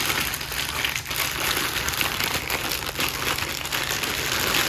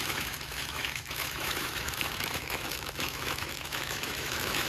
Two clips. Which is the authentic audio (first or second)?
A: first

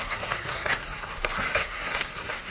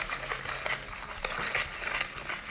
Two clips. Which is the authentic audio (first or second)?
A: second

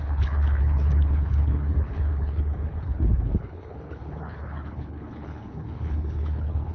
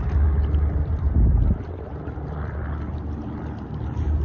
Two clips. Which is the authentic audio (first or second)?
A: second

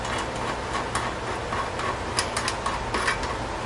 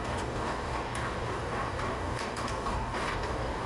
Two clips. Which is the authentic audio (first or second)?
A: first